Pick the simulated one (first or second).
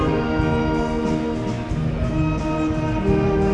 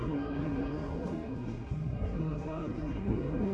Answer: second